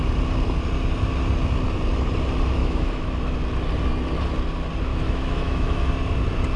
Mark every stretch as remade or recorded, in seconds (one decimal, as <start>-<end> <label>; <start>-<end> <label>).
0.0-2.6 recorded; 2.6-3.3 remade; 3.3-4.9 recorded; 4.9-5.9 remade; 5.9-6.6 recorded